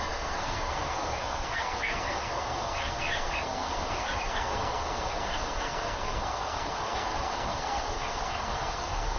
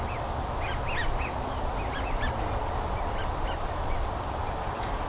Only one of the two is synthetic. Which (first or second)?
first